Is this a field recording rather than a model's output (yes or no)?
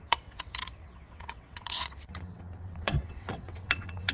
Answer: no